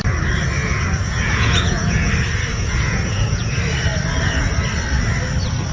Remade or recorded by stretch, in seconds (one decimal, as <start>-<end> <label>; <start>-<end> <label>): 0.0-0.6 recorded; 0.6-2.1 remade; 2.1-2.5 recorded; 2.5-3.5 remade; 3.5-5.7 recorded